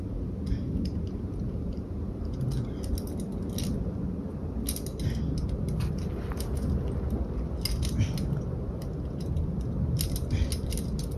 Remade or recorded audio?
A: recorded